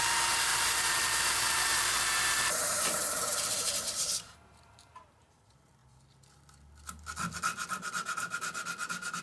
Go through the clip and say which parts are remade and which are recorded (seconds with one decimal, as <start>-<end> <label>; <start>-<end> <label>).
0.0-5.8 remade; 5.8-9.2 recorded